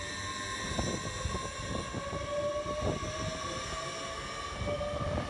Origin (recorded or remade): recorded